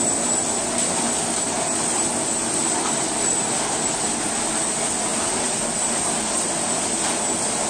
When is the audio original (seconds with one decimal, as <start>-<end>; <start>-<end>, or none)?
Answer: 0.0-5.1; 5.8-7.7